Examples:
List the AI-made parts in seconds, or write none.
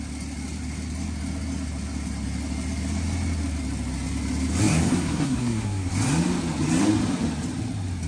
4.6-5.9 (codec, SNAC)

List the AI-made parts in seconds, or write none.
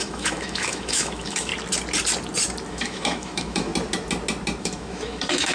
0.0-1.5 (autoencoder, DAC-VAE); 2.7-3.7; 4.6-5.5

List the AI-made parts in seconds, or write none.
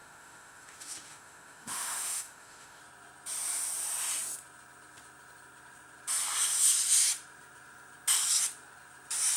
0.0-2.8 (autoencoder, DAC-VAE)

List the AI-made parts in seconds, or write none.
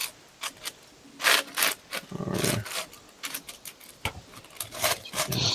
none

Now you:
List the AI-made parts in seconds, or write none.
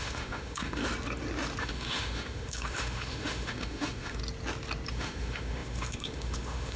0.0-0.8 (autoencoder, DAC-VAE); 1.6-4.2; 4.9-6.8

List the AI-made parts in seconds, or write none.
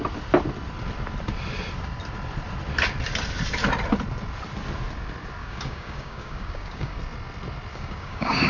5.4-7.0 (codec, DAC); 7.7-8.5